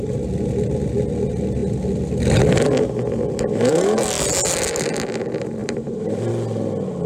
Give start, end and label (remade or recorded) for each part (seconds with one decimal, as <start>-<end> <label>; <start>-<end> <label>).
0.0-5.6 recorded; 5.6-6.3 remade; 6.3-7.1 recorded